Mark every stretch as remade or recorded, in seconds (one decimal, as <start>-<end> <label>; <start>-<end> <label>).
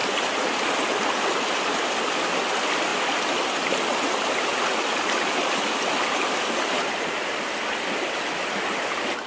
0.0-9.3 recorded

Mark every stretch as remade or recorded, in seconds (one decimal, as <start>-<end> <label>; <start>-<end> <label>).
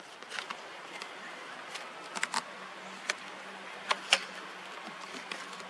0.0-5.7 recorded